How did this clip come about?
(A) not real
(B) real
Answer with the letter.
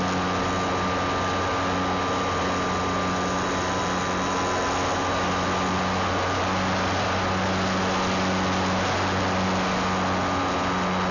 B